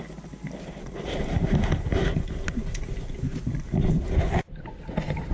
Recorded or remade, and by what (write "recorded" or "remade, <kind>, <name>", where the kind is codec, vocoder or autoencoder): recorded